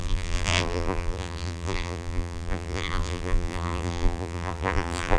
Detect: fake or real fake